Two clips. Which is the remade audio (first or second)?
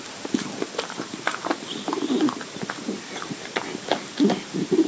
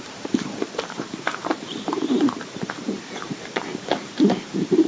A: second